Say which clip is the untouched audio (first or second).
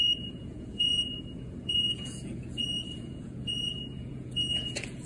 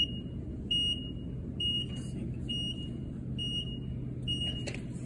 second